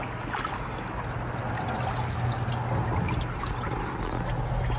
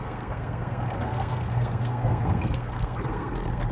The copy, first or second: second